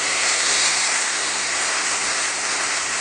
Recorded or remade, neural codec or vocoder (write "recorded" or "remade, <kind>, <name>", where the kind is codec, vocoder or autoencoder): remade, codec, SNAC